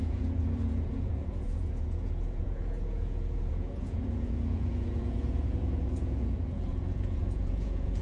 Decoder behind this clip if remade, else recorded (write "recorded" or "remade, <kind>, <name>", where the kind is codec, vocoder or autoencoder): remade, vocoder, Vocos